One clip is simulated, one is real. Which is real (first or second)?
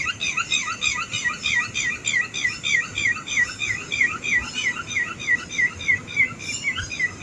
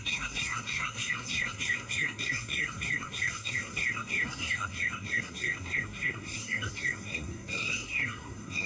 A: first